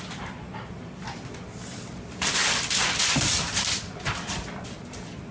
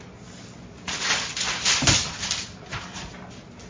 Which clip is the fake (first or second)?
first